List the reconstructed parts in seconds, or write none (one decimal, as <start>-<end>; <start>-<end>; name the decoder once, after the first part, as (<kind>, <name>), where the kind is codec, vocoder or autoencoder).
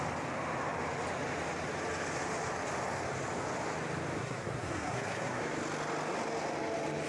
4.2-5.4 (codec, SNAC)